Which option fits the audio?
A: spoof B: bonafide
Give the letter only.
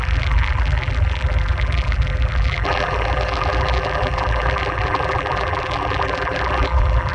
A